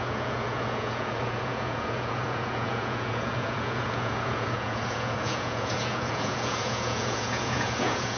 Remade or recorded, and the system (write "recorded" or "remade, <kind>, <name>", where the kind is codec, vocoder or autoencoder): remade, vocoder, Vocos